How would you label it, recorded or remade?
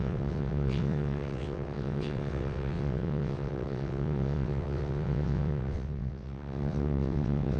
remade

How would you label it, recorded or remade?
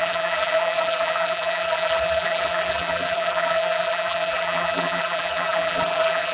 remade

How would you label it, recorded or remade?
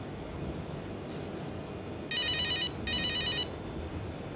recorded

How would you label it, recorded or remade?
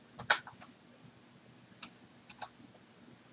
recorded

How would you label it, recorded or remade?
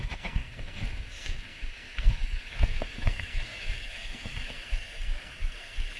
remade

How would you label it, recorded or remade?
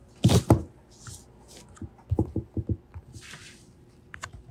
recorded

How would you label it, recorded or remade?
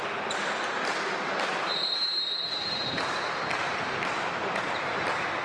remade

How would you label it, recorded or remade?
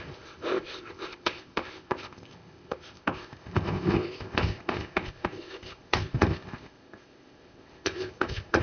remade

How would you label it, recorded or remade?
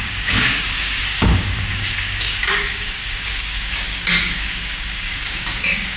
remade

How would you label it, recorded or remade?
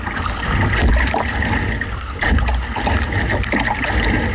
recorded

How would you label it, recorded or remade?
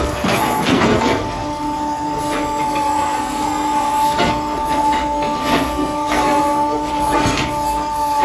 remade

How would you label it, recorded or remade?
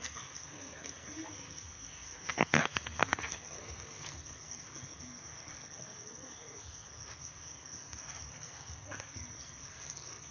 remade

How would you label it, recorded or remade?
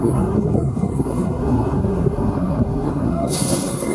remade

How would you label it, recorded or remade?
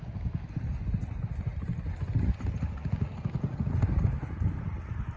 recorded